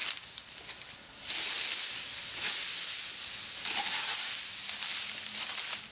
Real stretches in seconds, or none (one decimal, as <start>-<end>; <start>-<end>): 0.0-5.9